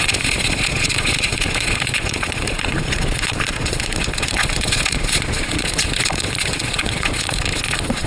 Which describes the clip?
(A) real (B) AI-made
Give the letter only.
B